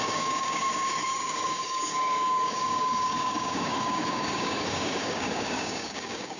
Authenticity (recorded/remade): remade